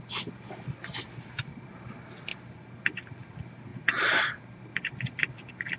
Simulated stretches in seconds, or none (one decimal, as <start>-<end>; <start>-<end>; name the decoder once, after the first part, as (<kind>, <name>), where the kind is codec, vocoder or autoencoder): none